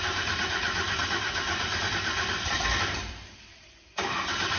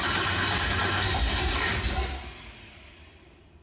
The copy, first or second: first